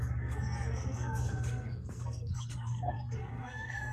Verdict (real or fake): fake